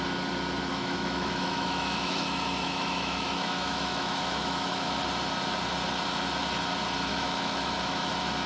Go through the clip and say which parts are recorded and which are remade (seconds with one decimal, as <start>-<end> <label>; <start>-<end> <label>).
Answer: 0.0-0.7 recorded; 0.7-5.0 remade; 5.0-7.1 recorded; 7.1-8.1 remade; 8.1-8.5 recorded